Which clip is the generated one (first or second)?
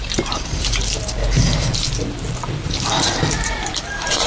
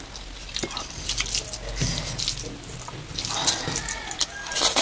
first